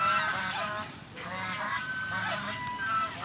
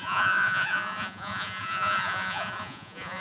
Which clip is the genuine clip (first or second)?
first